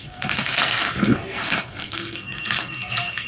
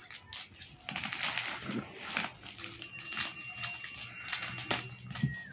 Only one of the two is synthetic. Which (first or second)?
first